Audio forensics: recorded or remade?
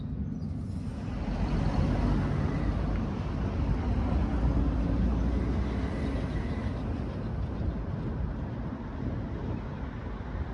recorded